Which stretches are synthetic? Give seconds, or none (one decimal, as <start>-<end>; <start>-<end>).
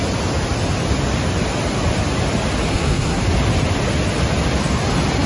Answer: 2.7-3.2